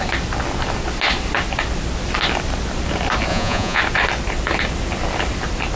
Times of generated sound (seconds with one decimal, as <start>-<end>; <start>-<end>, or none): 3.3-3.8